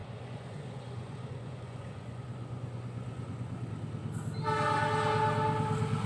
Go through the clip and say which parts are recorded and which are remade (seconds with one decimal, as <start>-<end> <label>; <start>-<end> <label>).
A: 0.0-3.7 remade; 3.7-6.1 recorded